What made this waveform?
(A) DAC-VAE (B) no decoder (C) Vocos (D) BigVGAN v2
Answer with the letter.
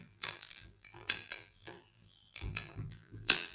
D